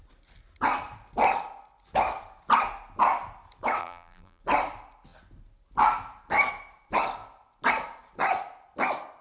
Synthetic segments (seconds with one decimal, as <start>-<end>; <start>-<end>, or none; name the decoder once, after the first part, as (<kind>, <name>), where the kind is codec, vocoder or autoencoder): 3.8-4.4 (vocoder, BigVGAN v2)